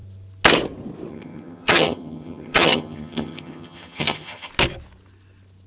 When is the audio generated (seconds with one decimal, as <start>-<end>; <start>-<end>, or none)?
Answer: 1.1-4.5